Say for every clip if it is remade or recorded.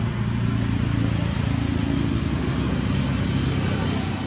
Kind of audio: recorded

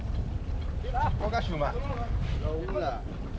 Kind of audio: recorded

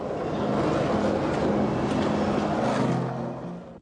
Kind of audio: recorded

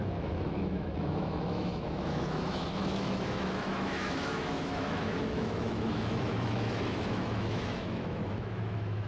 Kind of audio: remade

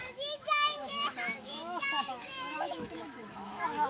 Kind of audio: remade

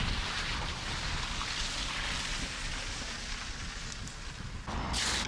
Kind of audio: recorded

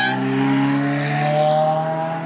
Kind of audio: recorded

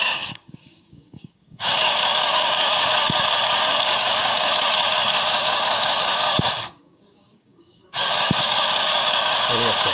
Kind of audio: remade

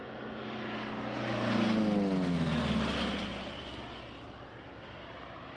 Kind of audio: recorded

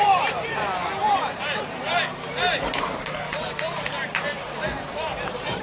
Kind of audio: remade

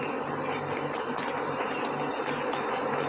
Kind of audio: recorded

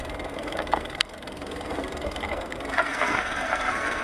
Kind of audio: remade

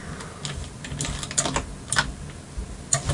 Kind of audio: recorded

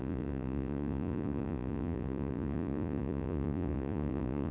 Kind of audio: remade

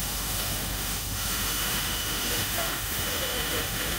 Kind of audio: remade